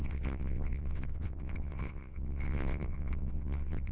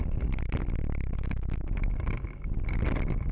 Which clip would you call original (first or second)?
second